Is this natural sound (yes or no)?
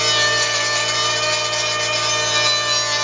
yes